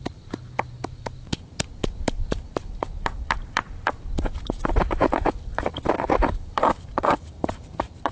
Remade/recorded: remade